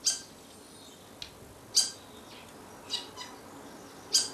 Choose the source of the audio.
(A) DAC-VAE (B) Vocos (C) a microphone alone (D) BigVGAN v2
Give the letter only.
C